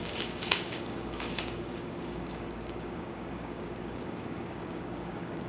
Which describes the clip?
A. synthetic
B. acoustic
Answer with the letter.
A